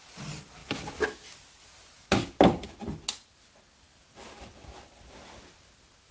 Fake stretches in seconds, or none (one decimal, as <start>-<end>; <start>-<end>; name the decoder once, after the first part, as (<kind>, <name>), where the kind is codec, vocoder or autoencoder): none